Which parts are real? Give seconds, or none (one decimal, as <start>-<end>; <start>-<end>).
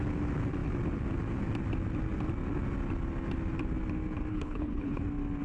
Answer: 0.0-4.3; 5.0-5.4